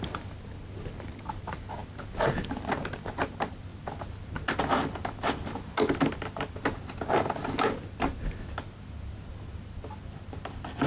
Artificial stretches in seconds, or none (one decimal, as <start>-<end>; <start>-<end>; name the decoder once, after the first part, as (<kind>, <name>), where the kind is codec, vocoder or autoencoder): none